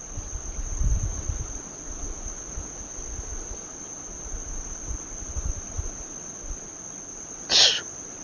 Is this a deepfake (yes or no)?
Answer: no